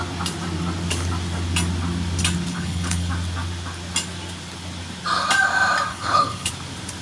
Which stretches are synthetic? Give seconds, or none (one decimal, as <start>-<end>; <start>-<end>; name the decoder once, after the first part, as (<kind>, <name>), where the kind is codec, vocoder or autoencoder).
2.5-3.1 (codec, HILCodec); 5.9-6.5